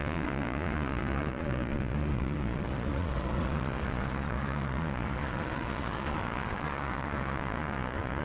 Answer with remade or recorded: remade